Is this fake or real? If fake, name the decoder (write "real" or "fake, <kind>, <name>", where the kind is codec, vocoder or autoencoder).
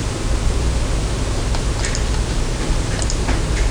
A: real